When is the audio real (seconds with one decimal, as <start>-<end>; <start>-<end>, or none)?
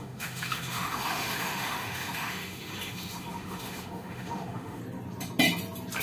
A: 4.8-6.0